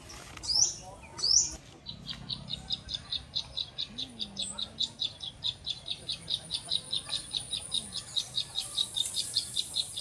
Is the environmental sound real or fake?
real